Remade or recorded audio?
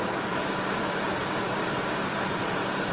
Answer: remade